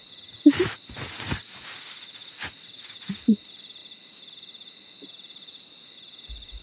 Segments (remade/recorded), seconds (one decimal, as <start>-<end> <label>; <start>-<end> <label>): 0.0-6.6 recorded